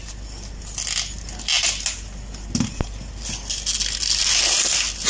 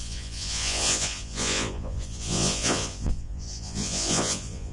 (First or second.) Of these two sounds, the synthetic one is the second